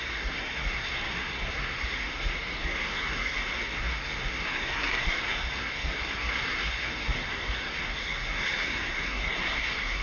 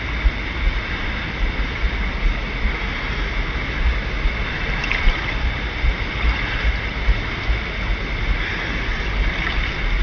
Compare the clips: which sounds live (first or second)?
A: second